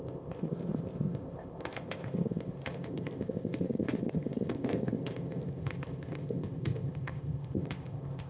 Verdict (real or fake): fake